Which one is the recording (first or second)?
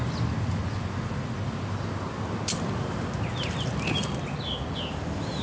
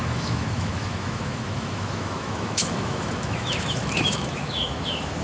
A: first